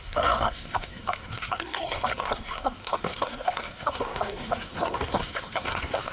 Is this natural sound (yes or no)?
no